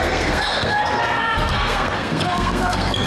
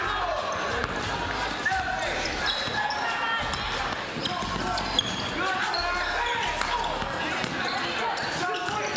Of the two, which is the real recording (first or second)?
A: second